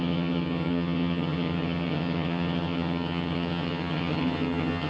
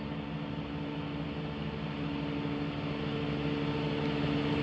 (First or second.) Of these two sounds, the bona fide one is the second